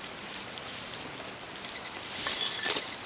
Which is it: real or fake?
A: real